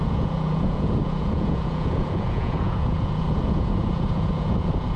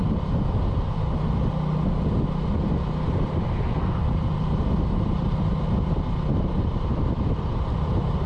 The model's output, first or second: first